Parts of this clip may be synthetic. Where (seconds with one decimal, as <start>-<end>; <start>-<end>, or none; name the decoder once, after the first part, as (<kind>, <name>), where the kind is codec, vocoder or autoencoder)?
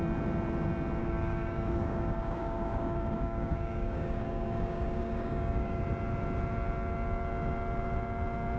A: 1.0-5.8 (codec, DAC)